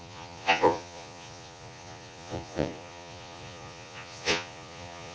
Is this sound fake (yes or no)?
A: yes